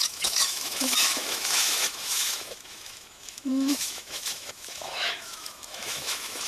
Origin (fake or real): fake